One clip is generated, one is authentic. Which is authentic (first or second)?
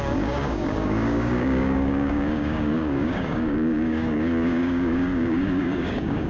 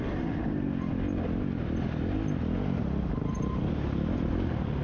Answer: second